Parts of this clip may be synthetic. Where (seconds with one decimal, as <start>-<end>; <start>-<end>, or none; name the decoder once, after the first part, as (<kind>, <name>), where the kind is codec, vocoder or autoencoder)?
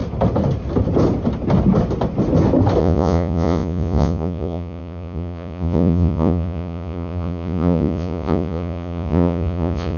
2.8-10.0 (vocoder, Vocos)